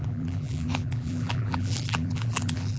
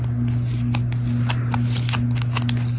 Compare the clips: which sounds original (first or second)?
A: second